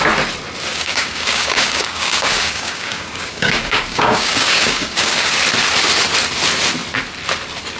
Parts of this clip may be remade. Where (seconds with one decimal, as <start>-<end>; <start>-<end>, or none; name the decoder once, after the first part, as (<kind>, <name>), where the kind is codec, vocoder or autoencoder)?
0.7-5.3 (codec, DAC)